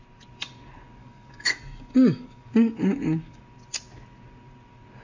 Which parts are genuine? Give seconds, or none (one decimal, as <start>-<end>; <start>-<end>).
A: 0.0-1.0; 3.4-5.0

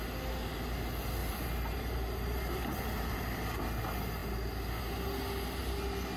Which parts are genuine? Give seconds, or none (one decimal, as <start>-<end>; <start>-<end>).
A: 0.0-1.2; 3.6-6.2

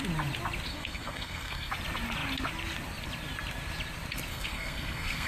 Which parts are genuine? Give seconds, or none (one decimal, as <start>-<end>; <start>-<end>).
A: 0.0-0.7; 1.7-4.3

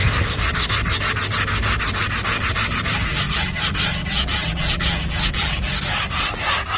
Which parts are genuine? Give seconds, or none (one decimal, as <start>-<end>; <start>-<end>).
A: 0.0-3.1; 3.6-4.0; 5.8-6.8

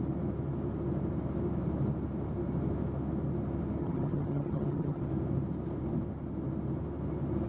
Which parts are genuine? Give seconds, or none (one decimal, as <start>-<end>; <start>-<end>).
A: 0.0-3.8; 5.0-7.5

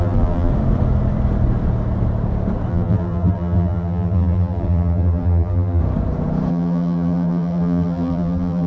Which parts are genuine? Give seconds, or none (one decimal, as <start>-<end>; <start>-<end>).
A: 0.5-2.7; 5.8-6.5

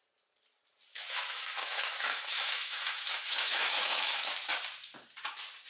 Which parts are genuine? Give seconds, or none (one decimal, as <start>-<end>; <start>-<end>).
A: 0.0-0.9; 4.3-5.7